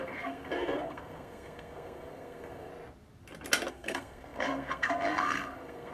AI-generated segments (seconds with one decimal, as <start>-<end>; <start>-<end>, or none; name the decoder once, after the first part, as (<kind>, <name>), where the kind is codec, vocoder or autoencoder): 0.0-2.7 (codec, SNAC); 3.7-5.9